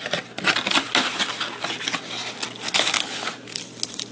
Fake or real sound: real